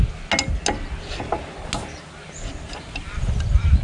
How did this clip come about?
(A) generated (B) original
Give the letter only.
B